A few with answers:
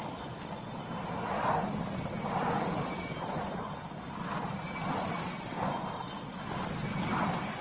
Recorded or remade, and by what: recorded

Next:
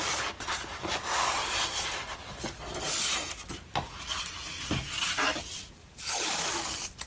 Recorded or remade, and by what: recorded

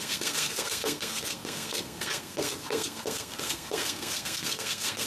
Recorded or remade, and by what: remade, codec, SNAC